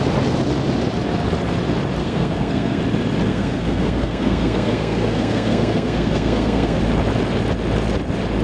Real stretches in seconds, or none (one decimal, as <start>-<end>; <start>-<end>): 0.0-2.0; 2.8-3.3; 6.8-8.4